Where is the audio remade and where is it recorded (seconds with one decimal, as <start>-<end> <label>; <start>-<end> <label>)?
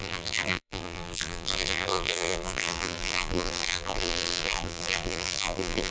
0.0-5.9 remade